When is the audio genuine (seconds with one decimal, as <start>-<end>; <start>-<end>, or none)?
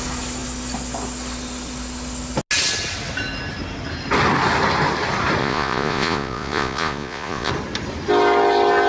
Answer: 0.0-5.4; 7.5-8.9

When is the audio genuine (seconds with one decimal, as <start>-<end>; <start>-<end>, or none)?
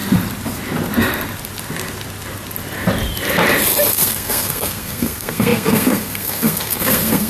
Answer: 0.0-3.9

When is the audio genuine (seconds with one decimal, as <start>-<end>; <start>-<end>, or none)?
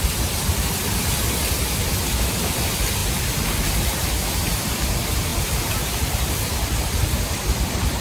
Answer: 3.0-3.7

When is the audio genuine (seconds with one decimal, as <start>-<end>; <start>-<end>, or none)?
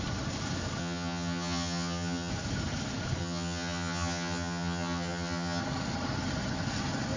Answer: 0.0-0.8; 2.3-3.2; 5.6-7.2